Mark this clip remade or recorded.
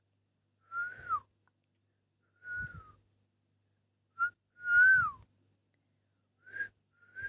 recorded